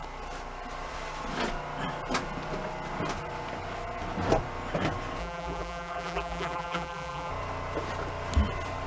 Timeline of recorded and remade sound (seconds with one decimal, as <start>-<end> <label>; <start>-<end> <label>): 0.0-5.2 recorded; 5.2-7.3 remade; 7.3-8.9 recorded